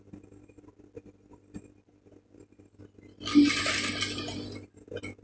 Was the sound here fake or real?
real